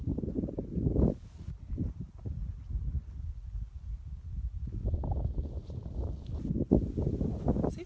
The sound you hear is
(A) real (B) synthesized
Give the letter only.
A